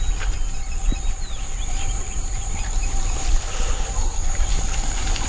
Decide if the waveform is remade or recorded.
recorded